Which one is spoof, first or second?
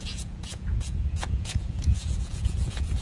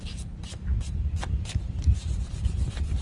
first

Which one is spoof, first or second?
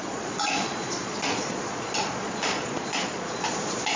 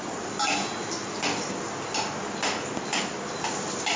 first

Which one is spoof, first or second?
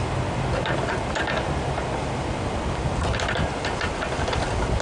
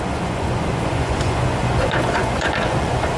second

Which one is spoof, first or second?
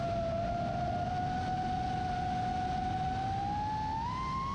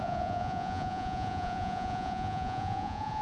second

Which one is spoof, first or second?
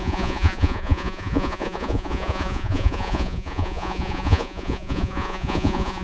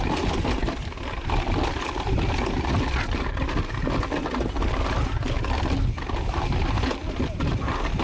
first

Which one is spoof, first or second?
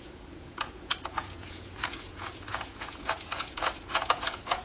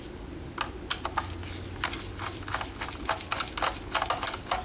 first